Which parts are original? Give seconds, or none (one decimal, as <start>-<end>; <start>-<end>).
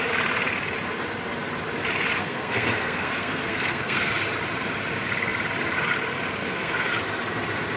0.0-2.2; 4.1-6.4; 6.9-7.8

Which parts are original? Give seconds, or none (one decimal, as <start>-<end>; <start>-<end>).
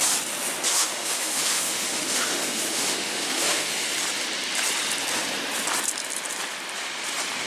0.0-0.7; 3.7-7.5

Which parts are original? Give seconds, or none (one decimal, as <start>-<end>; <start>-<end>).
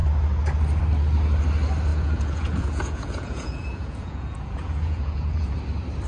0.0-1.9; 5.5-6.1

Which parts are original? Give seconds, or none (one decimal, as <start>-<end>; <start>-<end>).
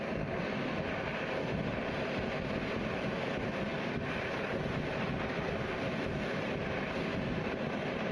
0.0-8.1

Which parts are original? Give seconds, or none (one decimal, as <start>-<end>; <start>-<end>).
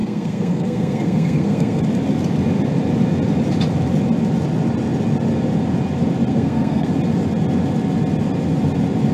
1.8-6.3; 6.9-9.1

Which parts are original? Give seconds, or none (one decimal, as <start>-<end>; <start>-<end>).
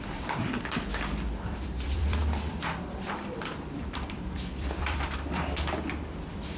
2.2-3.1